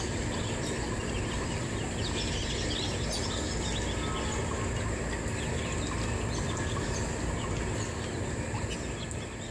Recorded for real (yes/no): yes